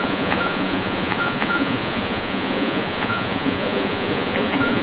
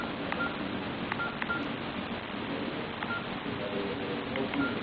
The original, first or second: second